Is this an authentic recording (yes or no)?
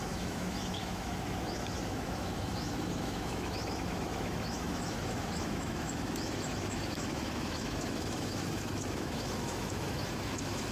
no